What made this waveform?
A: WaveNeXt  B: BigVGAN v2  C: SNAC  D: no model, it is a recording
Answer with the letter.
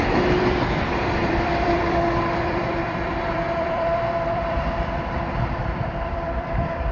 B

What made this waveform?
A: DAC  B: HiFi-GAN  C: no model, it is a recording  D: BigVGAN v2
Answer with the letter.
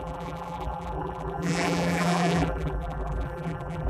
D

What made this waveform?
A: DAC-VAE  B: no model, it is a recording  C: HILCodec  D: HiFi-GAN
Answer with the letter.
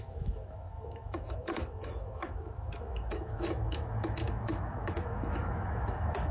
A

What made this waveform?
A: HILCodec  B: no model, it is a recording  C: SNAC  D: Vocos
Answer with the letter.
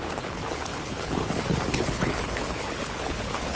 A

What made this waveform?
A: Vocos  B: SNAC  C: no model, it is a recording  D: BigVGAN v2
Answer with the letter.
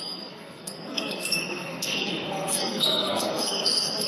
B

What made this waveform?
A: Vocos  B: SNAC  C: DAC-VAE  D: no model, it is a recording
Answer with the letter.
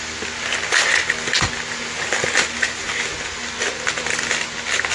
D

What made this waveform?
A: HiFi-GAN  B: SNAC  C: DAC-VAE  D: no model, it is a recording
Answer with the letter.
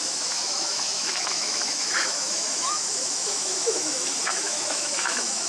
C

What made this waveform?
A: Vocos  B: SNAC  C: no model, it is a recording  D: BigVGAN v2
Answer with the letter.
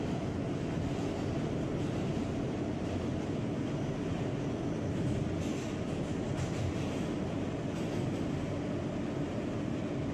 C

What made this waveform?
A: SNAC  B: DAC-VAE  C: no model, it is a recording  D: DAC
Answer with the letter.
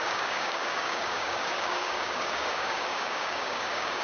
D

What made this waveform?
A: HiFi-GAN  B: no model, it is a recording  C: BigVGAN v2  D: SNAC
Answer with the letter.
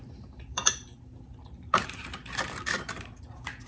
C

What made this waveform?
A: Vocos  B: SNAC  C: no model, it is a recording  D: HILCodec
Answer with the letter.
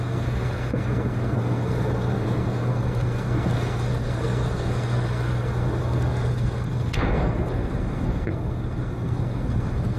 B